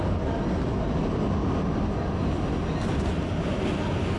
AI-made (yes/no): no